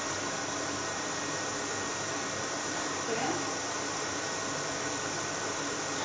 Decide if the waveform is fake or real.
fake